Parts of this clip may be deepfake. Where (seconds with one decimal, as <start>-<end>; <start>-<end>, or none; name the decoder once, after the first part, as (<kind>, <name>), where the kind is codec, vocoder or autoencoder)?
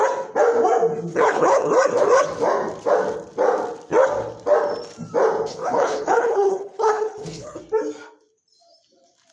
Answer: 1.1-1.7 (codec, HILCodec); 5.5-7.6